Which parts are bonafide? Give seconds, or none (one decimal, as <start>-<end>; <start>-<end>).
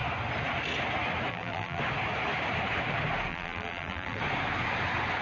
0.0-1.3; 1.8-3.3; 4.2-5.2